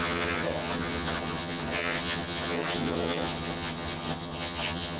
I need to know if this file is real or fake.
fake